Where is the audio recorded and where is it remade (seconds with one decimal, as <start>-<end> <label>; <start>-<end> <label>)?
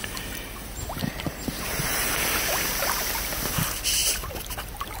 0.0-3.0 remade; 3.0-5.0 recorded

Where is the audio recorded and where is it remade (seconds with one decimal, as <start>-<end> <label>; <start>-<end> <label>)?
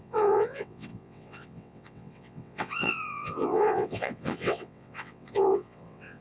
0.0-6.2 remade